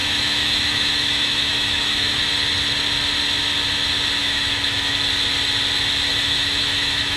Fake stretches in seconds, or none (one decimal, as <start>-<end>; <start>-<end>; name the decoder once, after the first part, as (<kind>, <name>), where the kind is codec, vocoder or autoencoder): 0.0-2.2 (autoencoder, DAC-VAE); 4.2-4.9; 6.1-7.2